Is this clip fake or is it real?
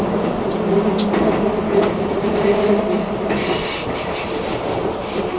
real